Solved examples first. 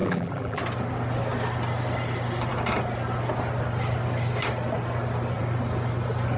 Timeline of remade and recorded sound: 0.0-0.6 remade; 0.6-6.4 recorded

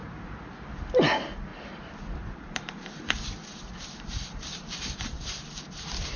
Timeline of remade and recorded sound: 0.0-1.5 recorded; 1.5-5.2 remade; 5.2-6.2 recorded

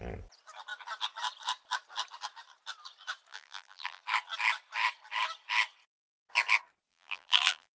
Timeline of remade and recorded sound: 0.0-3.3 recorded; 3.3-4.0 remade; 4.0-6.9 recorded; 6.9-7.7 remade